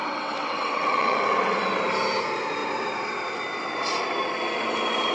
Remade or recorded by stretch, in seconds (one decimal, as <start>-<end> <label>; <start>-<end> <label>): 0.0-1.8 remade; 1.8-5.1 recorded